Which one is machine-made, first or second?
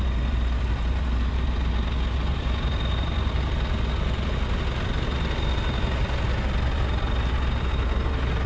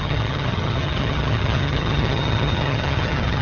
second